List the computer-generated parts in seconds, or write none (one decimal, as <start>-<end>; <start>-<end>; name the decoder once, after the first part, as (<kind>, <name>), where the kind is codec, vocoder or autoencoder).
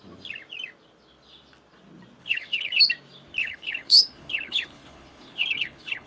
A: 2.2-2.8 (codec, HILCodec); 3.4-6.1